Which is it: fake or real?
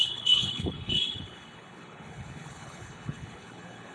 fake